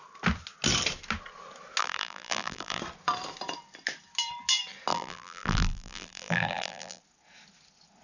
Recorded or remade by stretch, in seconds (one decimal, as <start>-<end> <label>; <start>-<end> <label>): 0.0-1.8 recorded; 1.8-2.8 remade; 2.8-4.9 recorded; 4.9-7.0 remade; 7.0-8.0 recorded